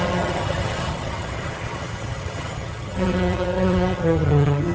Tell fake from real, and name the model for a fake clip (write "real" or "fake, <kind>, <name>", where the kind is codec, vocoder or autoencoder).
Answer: fake, vocoder, HiFi-GAN